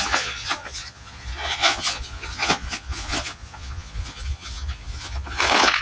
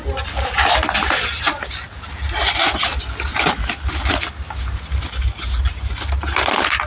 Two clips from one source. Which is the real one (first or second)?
second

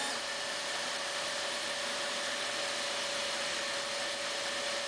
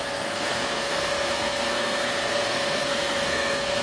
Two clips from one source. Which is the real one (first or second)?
first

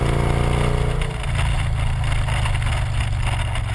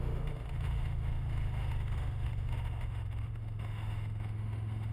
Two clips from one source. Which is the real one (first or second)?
first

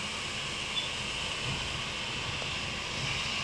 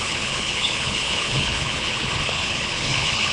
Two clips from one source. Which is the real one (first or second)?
first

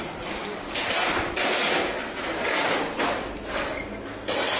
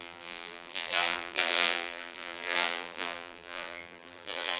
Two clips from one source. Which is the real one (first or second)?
first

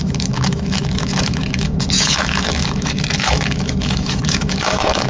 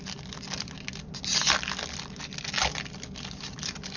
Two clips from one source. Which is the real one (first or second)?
second